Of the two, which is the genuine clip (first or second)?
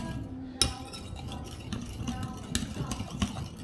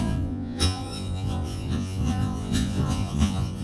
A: first